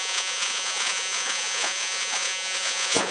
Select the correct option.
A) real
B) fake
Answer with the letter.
B